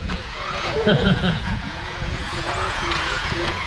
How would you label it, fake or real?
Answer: fake